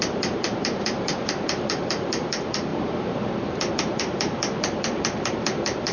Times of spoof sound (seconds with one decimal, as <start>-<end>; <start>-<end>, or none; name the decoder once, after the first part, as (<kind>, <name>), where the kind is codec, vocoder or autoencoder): 0.0-5.9 (vocoder, BigVGAN v2)

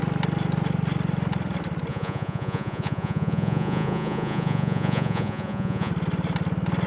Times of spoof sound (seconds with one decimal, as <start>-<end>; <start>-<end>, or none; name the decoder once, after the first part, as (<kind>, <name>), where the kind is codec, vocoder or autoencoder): 1.9-5.9 (vocoder, Vocos)